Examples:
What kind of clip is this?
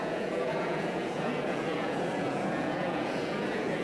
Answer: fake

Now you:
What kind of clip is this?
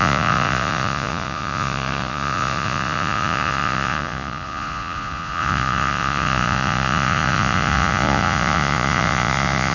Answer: fake